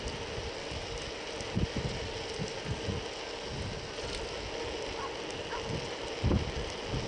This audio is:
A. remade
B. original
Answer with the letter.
B